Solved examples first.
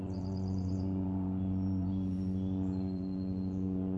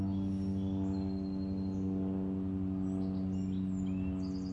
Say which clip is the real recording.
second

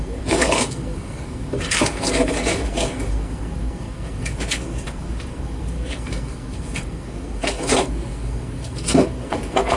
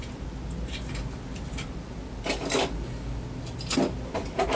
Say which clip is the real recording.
second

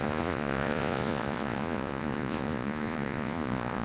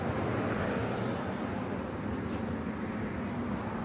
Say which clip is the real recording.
second